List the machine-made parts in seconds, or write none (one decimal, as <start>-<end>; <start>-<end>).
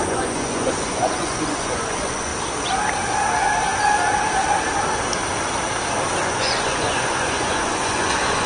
0.0-2.3; 6.2-8.5